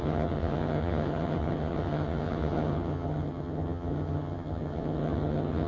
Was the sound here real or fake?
fake